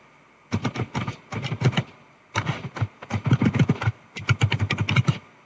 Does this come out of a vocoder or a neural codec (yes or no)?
no